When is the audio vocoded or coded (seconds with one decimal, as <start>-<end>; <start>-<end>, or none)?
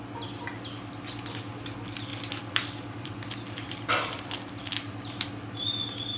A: 2.1-5.3